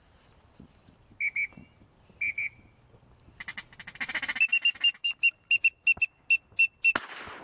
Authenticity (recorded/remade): recorded